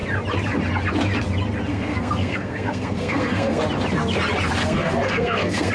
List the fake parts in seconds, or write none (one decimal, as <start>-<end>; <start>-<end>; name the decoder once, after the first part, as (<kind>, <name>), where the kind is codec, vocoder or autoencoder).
1.7-3.6 (codec, SNAC); 4.6-5.7